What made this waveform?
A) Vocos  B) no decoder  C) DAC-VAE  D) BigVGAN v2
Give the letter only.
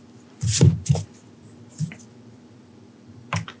D